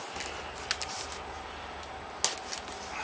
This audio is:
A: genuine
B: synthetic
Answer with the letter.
A